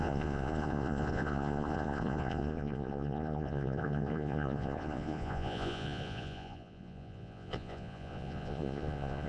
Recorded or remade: remade